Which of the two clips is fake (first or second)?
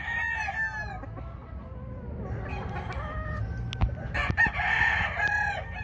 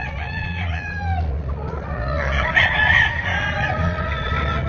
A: second